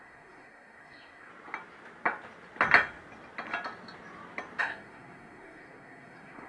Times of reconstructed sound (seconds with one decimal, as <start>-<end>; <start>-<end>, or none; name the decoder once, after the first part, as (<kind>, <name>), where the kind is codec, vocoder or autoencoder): 0.0-1.3 (codec, SNAC); 4.6-6.5

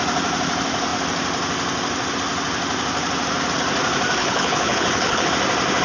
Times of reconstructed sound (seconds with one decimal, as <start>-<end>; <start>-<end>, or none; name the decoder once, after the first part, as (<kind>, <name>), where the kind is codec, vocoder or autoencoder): 4.2-5.3 (codec, HILCodec)

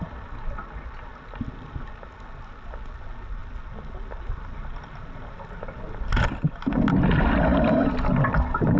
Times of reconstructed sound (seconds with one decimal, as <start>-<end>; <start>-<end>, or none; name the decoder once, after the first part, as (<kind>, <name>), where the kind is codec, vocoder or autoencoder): none